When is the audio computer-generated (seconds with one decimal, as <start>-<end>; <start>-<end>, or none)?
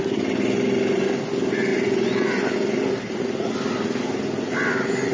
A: none